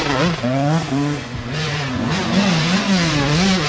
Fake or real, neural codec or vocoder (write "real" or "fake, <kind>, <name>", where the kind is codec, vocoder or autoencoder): fake, vocoder, Vocos